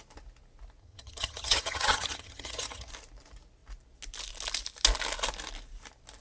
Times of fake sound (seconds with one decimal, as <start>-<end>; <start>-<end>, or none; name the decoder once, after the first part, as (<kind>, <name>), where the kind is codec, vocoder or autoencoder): 0.8-2.9 (vocoder, HiFi-GAN)